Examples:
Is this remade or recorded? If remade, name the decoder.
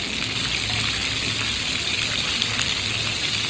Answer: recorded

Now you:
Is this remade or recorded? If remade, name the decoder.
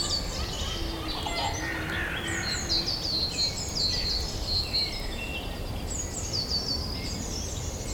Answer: recorded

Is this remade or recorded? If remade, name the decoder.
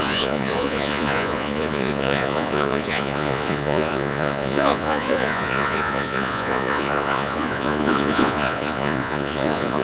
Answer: remade, vocoder, Vocos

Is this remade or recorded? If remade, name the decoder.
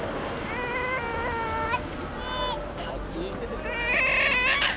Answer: recorded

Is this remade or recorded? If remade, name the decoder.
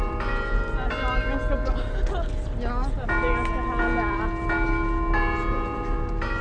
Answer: recorded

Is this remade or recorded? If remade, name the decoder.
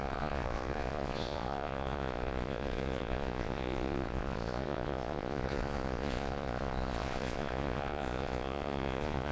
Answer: remade, vocoder, Vocos